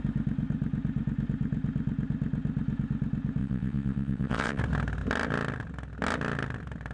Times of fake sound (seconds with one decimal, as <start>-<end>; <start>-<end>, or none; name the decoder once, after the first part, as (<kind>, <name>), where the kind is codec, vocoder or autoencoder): 3.4-4.6 (vocoder, WaveNeXt)